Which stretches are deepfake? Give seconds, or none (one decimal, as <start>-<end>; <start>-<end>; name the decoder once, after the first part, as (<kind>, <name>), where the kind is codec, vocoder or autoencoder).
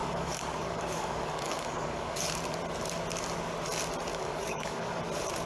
0.0-2.3 (codec, DAC); 4.1-5.0